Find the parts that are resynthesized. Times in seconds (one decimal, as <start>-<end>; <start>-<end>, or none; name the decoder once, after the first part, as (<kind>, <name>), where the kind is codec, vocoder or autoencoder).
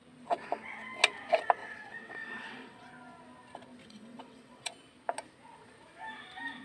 1.6-2.9 (vocoder, WaveNeXt); 3.8-4.7